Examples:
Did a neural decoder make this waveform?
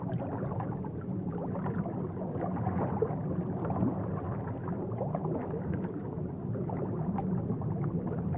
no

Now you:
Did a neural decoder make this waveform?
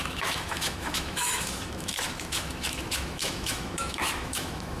yes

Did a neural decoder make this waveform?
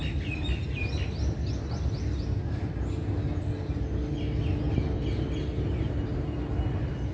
no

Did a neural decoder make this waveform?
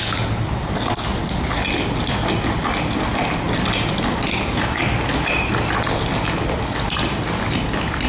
no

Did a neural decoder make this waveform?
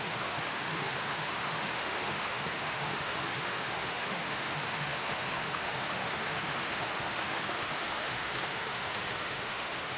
yes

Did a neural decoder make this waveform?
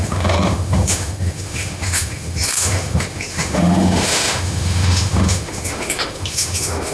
yes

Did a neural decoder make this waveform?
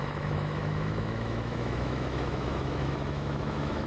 yes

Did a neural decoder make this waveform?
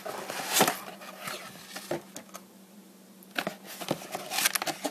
no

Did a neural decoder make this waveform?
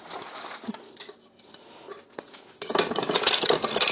no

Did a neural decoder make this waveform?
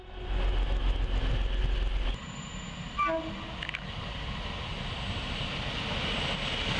no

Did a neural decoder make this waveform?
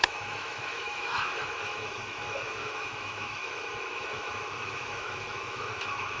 yes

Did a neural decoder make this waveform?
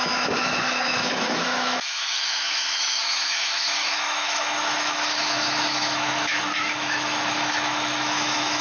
yes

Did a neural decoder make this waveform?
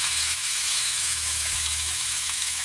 yes